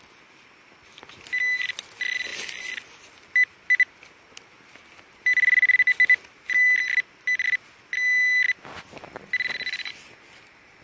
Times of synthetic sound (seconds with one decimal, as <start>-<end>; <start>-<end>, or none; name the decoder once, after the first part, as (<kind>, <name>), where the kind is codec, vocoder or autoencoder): none